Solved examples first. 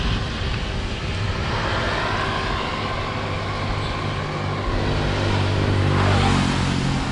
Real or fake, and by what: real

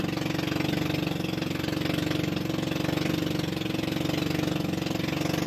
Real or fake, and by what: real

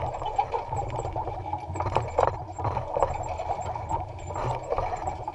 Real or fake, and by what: real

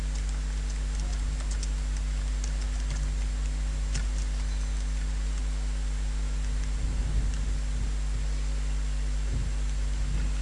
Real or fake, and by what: real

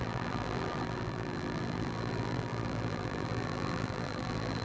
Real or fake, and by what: fake, vocoder, BigVGAN v2